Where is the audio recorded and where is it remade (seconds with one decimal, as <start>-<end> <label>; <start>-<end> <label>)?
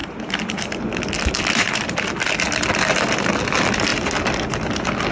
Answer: 0.0-2.3 remade; 2.3-5.1 recorded